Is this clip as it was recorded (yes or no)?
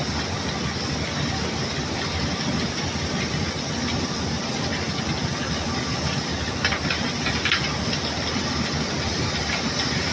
yes